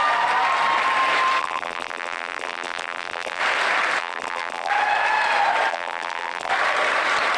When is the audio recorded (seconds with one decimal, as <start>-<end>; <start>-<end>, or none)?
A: 0.0-1.4; 3.4-4.0; 4.7-5.7; 6.5-7.4